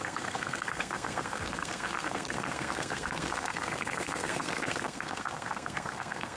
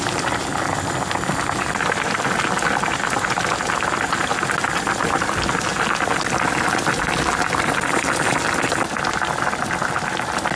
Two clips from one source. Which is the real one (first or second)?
second